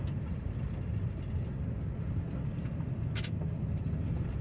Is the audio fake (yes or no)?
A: no